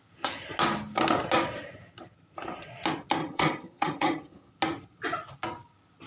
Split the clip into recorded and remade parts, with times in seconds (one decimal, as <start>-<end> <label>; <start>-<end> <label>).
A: 0.0-3.2 recorded; 3.2-4.5 remade; 4.5-6.1 recorded